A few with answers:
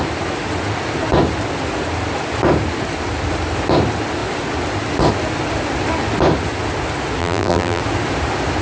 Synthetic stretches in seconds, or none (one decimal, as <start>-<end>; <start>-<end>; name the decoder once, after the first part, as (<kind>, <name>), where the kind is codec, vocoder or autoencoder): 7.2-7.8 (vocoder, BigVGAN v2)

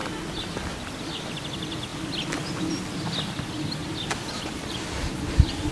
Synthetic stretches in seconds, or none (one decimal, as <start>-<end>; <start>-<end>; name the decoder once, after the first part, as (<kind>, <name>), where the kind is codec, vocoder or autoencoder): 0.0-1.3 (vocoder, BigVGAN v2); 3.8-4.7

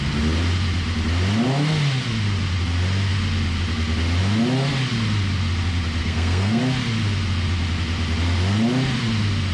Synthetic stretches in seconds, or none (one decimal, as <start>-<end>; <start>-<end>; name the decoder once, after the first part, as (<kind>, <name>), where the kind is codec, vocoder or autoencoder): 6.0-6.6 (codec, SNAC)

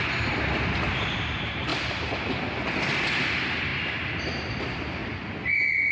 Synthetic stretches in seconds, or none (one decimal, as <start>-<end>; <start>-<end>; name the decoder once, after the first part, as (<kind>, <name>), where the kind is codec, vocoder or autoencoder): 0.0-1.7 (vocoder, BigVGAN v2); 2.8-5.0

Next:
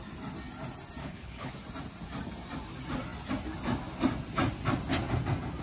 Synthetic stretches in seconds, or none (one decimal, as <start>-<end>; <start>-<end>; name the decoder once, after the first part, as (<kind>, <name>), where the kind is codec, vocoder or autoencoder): 1.0-1.5 (codec, HILCodec)

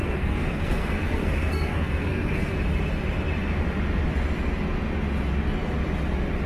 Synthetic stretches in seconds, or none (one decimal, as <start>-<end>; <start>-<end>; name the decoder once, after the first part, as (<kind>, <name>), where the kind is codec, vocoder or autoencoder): 0.0-2.5 (codec, SNAC)

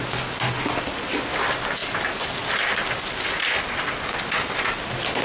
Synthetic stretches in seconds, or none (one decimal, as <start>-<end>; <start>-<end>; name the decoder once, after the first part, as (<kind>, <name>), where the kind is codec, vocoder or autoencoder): none

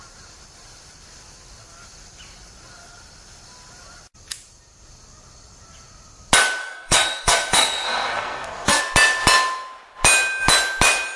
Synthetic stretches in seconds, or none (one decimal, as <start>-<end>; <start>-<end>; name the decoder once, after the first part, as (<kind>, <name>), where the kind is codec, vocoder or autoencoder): 6.6-8.8 (codec, SNAC)